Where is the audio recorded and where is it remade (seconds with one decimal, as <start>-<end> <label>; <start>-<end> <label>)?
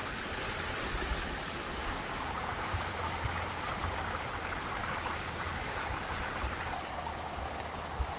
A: 0.0-1.8 recorded; 1.8-2.9 remade; 2.9-4.8 recorded; 4.8-5.8 remade; 5.8-8.2 recorded